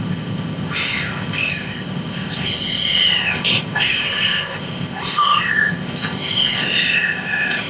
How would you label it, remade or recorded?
remade